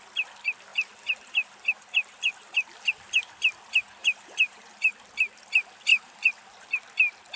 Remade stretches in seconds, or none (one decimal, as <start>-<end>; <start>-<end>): 0.7-2.9; 4.0-4.9; 5.9-6.7